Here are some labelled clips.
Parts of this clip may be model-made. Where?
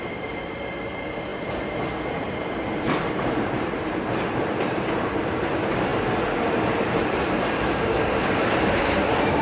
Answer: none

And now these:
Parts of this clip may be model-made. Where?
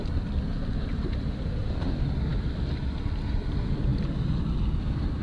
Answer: none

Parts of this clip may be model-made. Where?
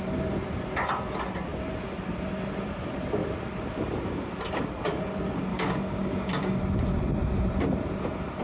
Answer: 5.5-6.6 (codec, DAC)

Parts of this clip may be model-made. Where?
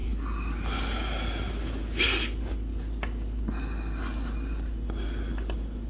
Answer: none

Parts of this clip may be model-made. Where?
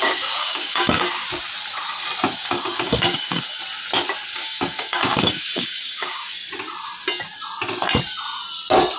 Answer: 0.4-1.0 (codec, DAC); 2.4-3.6; 4.3-6.3